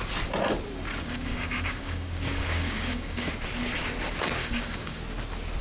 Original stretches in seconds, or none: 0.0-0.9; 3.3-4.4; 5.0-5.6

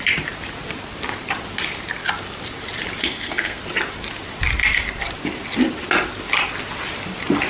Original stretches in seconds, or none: 0.0-3.0; 3.6-7.5

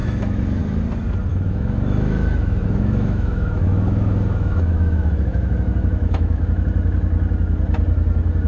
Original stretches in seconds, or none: 0.6-1.3; 6.4-8.5